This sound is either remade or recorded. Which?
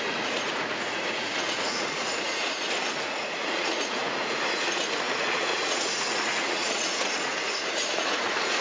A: remade